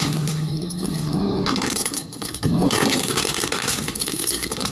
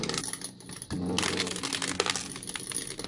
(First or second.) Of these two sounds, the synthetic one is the first